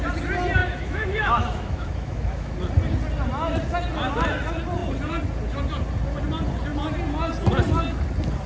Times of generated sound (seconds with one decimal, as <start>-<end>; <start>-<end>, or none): 0.6-2.5